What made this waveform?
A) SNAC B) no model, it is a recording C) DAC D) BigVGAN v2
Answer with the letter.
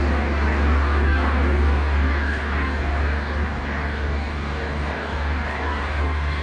C